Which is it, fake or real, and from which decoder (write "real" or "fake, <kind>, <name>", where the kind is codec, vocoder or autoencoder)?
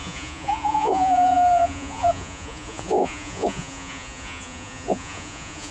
fake, vocoder, Vocos